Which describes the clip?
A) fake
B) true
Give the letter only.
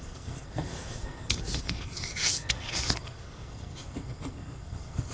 A